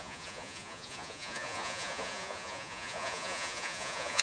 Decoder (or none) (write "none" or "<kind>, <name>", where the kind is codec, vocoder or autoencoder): vocoder, Vocos